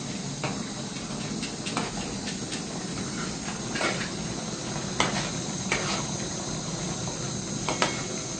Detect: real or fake real